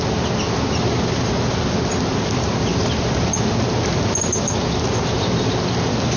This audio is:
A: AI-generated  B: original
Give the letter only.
B